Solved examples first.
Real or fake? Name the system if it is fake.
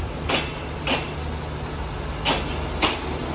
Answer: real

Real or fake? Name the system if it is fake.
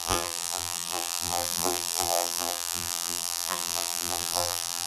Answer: fake, vocoder, BigVGAN v2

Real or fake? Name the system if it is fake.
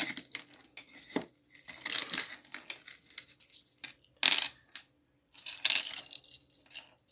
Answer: real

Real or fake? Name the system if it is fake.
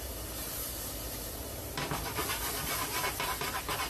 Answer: real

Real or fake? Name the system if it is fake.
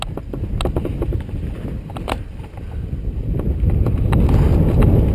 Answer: real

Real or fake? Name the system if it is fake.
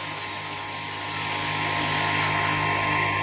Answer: real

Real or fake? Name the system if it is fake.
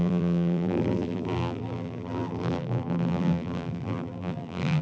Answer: fake, vocoder, BigVGAN v2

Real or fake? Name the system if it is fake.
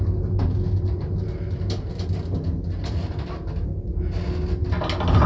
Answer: real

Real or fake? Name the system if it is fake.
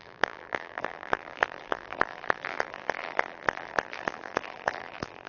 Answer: fake, vocoder, BigVGAN v2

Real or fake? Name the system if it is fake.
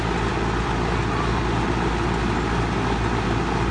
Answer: real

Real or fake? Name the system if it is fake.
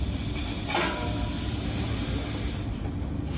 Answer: fake, vocoder, BigVGAN v2